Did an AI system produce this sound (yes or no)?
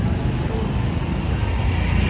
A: no